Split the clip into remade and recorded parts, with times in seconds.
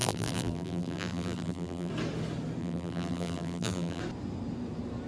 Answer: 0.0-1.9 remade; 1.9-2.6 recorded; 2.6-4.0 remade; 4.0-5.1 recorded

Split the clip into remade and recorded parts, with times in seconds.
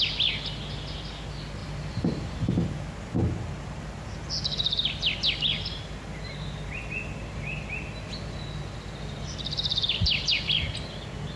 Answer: 0.0-1.6 recorded; 1.6-2.5 remade; 2.5-11.4 recorded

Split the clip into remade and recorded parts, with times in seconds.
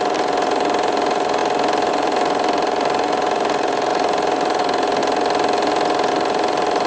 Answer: 0.0-1.4 remade; 1.4-1.9 recorded; 1.9-5.0 remade; 5.0-6.1 recorded; 6.1-6.9 remade